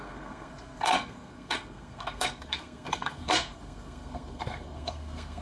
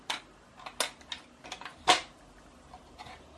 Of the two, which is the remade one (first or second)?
first